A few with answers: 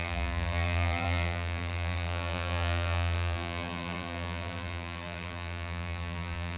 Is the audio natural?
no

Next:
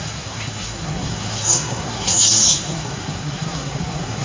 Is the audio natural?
no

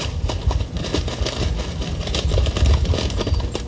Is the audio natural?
yes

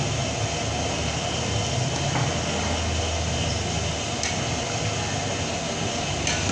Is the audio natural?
yes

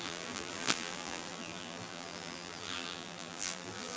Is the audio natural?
no